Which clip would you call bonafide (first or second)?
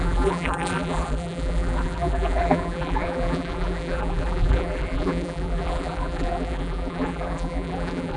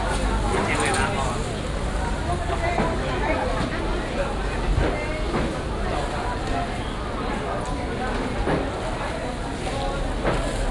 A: second